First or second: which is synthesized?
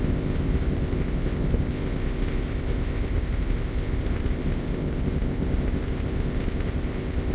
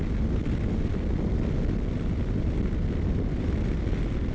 first